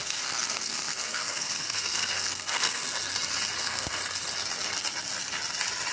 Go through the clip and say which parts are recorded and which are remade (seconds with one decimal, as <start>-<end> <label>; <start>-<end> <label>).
0.0-2.8 remade; 2.8-3.6 recorded; 3.6-4.0 remade; 4.0-5.9 recorded